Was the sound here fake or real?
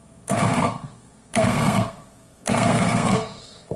fake